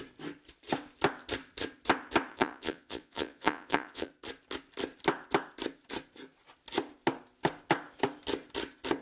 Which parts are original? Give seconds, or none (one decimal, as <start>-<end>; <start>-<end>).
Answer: 0.0-2.3; 4.1-9.0